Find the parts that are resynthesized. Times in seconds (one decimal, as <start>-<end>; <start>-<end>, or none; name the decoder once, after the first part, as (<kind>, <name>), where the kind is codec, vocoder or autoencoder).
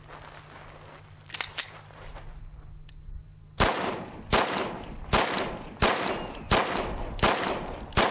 1.5-2.4 (vocoder, BigVGAN v2)